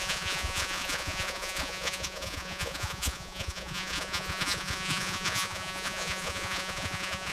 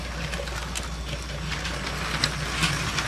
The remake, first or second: first